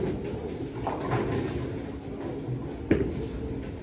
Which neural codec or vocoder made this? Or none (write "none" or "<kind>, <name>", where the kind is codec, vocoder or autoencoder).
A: none